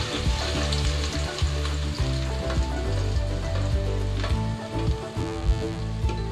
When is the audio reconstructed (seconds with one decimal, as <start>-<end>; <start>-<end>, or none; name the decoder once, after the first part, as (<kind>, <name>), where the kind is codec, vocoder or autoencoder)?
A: 5.2-5.8 (vocoder, BigVGAN v2)